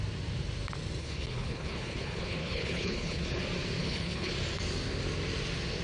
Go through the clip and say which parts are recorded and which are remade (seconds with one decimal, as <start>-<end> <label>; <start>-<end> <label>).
0.0-1.0 recorded; 1.0-3.4 remade; 3.4-3.8 recorded; 3.8-4.3 remade; 4.3-5.8 recorded